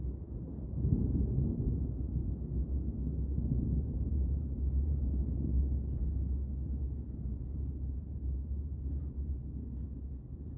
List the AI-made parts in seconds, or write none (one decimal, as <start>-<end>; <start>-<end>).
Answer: 0.0-2.2; 3.5-5.5; 6.8-9.4; 10.2-10.6